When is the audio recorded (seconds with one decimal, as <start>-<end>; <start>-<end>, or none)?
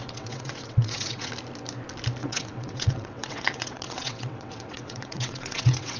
1.3-2.2